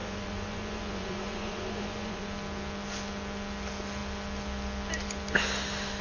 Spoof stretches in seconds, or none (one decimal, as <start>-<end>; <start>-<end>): 0.0-2.2